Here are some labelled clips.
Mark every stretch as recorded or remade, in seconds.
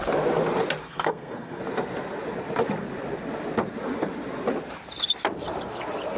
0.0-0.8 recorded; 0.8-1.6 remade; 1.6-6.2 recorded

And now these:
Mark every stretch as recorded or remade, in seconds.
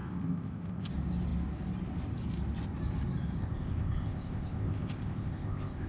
0.0-0.9 remade; 0.9-3.4 recorded; 3.4-5.9 remade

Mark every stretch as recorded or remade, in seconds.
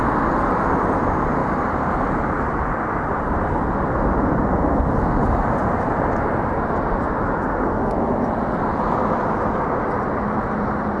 0.0-1.4 recorded; 1.4-3.7 remade; 3.7-11.0 recorded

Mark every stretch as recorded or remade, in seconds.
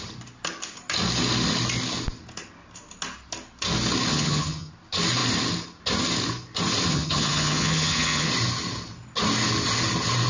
0.0-4.1 recorded; 4.1-4.7 remade; 4.7-6.9 recorded; 6.9-8.3 remade; 8.3-10.3 recorded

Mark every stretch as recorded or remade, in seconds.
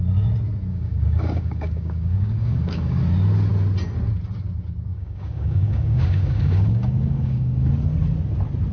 0.0-0.7 recorded; 0.7-3.0 remade; 3.0-4.9 recorded; 4.9-7.7 remade; 7.7-8.7 recorded